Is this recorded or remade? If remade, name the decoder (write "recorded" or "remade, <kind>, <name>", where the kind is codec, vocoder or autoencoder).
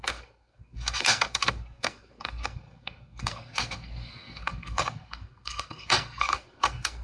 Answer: remade, codec, SNAC